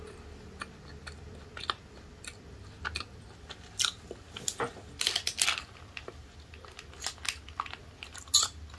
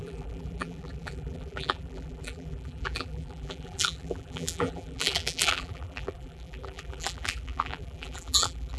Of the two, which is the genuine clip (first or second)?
first